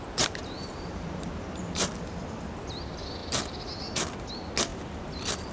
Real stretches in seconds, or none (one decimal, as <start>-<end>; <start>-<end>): 0.0-0.4; 1.9-5.5